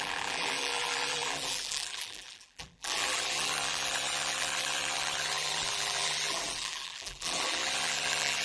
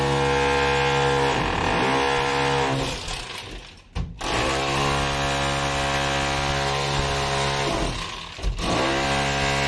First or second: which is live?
second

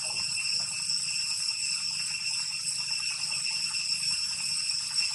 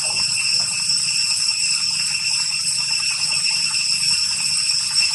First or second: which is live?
first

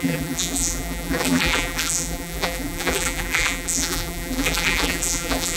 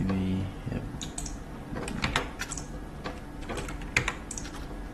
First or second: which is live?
second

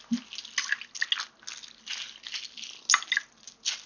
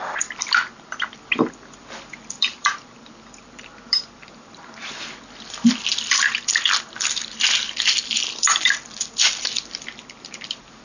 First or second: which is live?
first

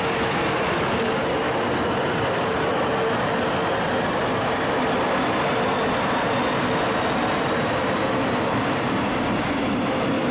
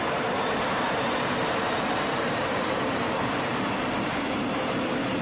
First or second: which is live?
first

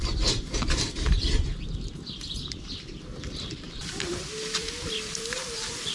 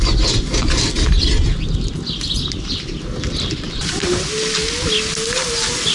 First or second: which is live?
second